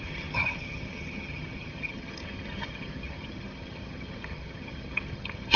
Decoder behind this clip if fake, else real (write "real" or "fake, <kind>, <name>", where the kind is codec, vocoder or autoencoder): fake, vocoder, HiFi-GAN